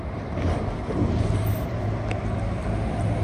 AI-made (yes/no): yes